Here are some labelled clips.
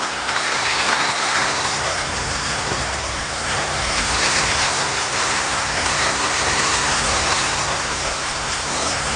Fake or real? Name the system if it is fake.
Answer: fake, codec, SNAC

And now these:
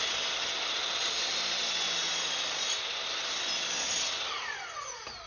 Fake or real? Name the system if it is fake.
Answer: real